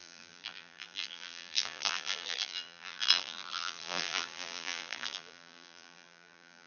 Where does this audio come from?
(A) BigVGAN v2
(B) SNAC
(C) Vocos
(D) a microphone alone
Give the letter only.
A